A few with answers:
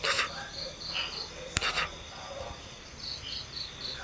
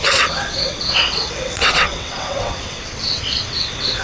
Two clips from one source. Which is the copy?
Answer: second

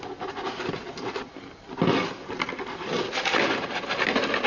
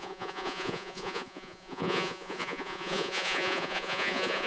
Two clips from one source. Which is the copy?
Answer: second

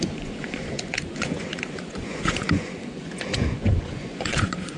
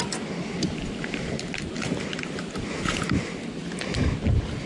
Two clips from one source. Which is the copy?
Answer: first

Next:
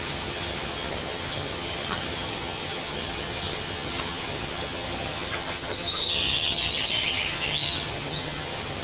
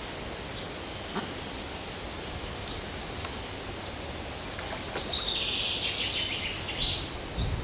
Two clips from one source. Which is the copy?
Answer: first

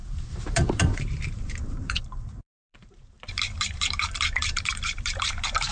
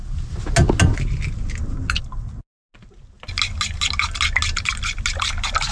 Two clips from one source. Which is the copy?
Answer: first